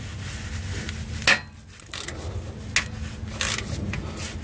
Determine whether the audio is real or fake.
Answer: real